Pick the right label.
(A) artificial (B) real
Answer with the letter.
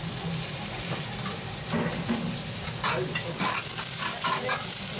B